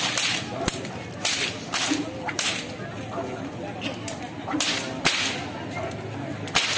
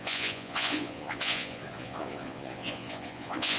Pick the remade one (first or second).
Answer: second